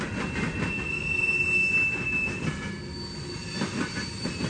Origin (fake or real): real